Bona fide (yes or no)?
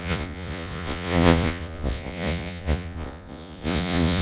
no